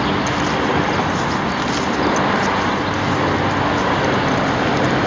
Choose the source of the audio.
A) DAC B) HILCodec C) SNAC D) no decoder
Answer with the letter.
D